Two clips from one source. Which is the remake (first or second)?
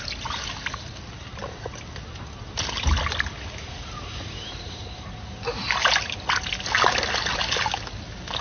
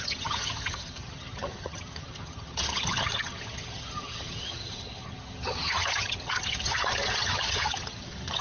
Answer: second